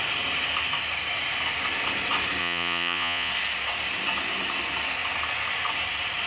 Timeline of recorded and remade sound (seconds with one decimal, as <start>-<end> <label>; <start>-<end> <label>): 0.0-2.4 recorded; 2.4-3.3 remade; 3.3-6.3 recorded